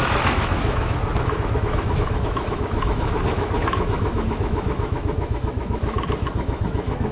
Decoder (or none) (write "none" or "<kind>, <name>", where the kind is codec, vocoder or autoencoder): autoencoder, DAC-VAE